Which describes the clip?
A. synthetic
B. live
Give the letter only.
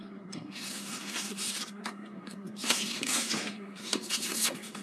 A